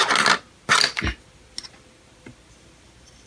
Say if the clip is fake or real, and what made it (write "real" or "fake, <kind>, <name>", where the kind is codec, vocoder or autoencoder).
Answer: real